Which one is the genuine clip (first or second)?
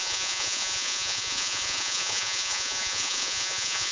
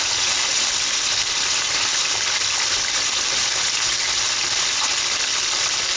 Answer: second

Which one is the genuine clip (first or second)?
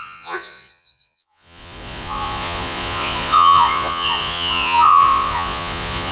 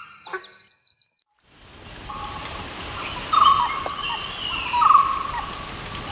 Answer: second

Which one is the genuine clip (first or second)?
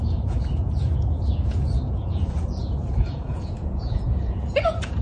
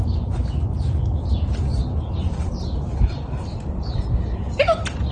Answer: second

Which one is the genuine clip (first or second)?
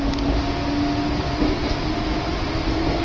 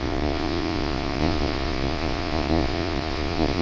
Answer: first